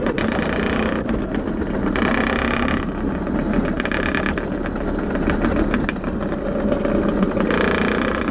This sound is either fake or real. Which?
real